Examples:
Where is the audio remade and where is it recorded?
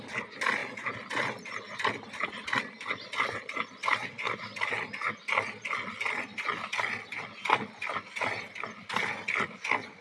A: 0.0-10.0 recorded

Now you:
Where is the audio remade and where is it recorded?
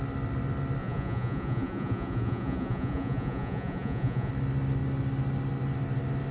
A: 0.0-0.8 recorded; 0.8-4.3 remade; 4.3-6.3 recorded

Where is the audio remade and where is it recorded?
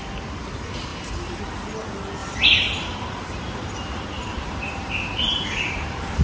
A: 0.0-0.9 recorded; 0.9-1.4 remade; 1.4-2.2 recorded; 2.2-6.2 remade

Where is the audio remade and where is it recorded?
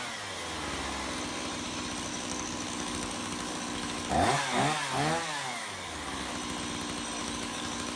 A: 0.0-2.1 recorded; 2.1-6.3 remade; 6.3-7.2 recorded; 7.2-8.0 remade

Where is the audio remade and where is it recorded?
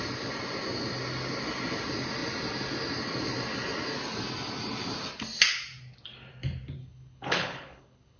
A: 0.0-6.8 recorded; 6.8-8.2 remade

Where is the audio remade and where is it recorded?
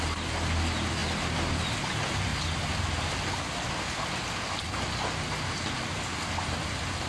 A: 0.0-7.1 recorded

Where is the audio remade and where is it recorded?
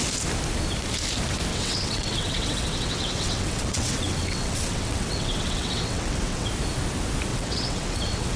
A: 0.0-1.5 recorded; 1.5-6.5 remade; 6.5-7.3 recorded; 7.3-8.4 remade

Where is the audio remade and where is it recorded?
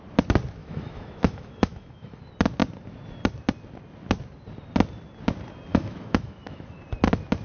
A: 0.0-0.6 recorded; 0.6-2.2 remade; 2.2-5.7 recorded; 5.7-6.8 remade; 6.8-7.4 recorded